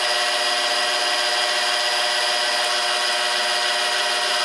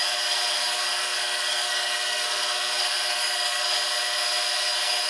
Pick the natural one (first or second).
first